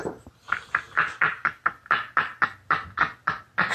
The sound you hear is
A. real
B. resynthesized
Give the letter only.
A